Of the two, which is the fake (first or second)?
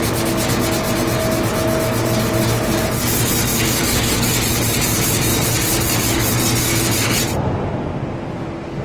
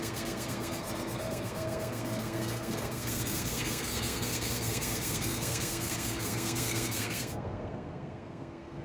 second